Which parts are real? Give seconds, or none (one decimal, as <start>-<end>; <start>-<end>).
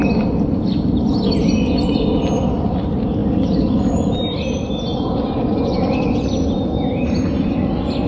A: 0.0-8.1